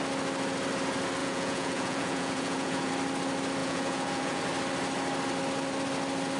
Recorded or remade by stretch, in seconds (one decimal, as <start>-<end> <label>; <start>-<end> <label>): 0.0-1.2 recorded; 1.2-2.9 remade; 2.9-3.6 recorded; 3.6-4.4 remade; 4.4-6.4 recorded